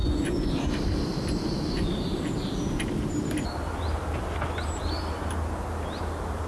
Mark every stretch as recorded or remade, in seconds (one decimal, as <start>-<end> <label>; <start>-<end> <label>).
0.0-0.5 remade; 0.5-6.5 recorded

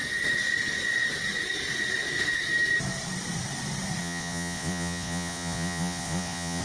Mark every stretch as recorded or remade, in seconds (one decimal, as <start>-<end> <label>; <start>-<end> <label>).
0.0-4.0 recorded; 4.0-6.6 remade